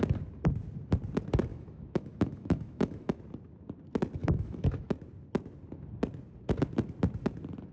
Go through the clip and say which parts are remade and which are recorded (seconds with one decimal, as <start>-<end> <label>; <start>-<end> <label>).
0.0-1.5 recorded; 1.5-3.2 remade; 3.2-4.2 recorded; 4.2-4.9 remade; 4.9-7.7 recorded